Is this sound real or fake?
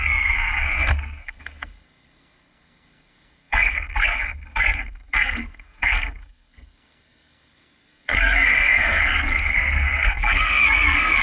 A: fake